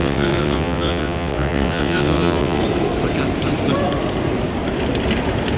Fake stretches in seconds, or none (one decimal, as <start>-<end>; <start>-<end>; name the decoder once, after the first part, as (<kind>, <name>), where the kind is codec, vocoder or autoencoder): 0.0-2.6 (vocoder, WaveNeXt)

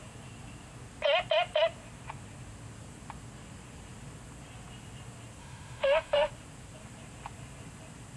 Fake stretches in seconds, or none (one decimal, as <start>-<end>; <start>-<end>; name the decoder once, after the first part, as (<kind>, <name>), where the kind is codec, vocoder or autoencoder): 5.4-6.3 (autoencoder, DAC-VAE)

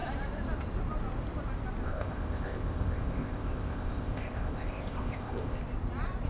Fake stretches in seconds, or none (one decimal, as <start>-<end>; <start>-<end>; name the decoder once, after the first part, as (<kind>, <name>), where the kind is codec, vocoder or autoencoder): 1.8-5.6 (codec, ZipCodec)

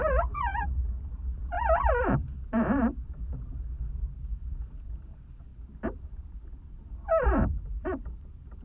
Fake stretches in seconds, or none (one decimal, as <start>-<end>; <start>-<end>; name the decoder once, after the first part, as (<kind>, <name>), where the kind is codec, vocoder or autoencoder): 0.0-8.6 (vocoder, BigVGAN v2)

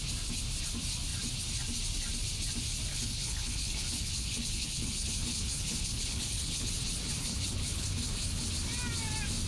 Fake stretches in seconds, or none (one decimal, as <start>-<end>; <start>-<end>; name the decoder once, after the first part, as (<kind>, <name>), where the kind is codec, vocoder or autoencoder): 2.9-6.7 (codec, HILCodec); 7.2-8.4

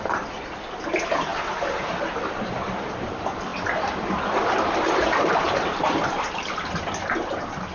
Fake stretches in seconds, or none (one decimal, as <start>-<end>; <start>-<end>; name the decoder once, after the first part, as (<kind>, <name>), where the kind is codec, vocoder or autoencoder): none

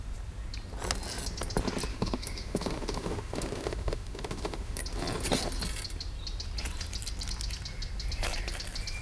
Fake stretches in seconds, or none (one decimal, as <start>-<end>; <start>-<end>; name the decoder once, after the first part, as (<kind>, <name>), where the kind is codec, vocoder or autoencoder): 1.9-4.8 (autoencoder, DAC-VAE)

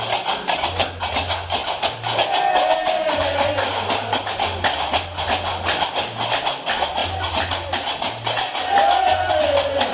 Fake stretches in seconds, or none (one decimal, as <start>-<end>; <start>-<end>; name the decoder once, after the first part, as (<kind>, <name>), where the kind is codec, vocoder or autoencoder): none